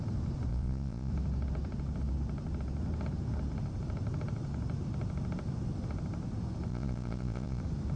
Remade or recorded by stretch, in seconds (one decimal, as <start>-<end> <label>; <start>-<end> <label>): 0.0-0.5 recorded; 0.5-1.1 remade; 1.1-6.7 recorded; 6.7-7.6 remade; 7.6-8.0 recorded